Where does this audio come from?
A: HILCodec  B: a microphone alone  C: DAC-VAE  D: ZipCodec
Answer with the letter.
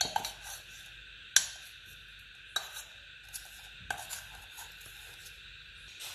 B